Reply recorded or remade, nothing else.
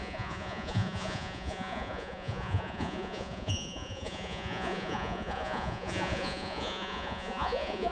remade